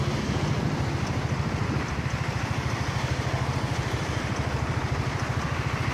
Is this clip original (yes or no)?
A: no